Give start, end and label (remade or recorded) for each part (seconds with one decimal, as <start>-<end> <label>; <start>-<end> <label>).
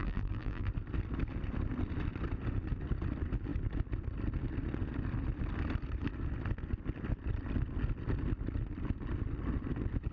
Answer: 0.0-0.7 remade; 0.7-10.1 recorded